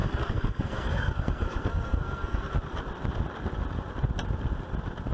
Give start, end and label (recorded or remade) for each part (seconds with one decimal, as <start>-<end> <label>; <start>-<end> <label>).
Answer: 0.0-2.5 remade; 2.5-5.1 recorded